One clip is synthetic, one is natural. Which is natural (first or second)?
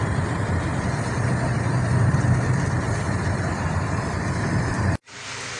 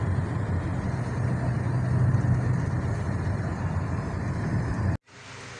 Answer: second